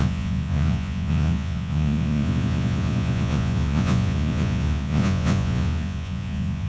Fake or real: fake